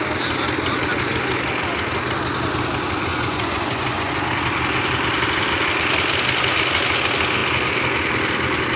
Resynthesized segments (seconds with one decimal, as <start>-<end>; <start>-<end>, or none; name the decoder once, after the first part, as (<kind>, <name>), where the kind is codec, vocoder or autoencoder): 3.1-4.1 (vocoder, Vocos)